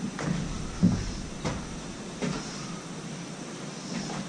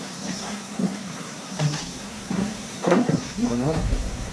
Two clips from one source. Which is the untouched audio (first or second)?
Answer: first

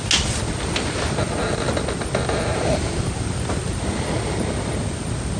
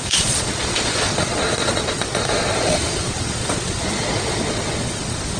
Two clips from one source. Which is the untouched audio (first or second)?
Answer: first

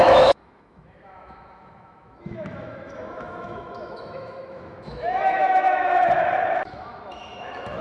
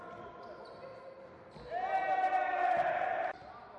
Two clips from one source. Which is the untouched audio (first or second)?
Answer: second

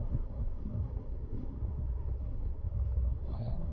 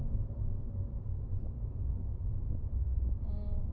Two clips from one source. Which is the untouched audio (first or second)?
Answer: second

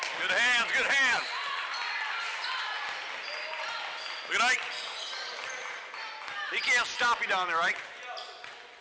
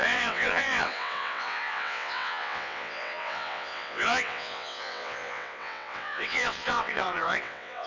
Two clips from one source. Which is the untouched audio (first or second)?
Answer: first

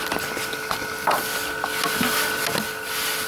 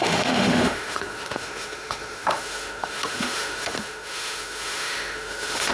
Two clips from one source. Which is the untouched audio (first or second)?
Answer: first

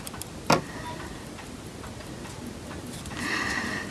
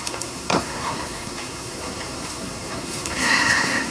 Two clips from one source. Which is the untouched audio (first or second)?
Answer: first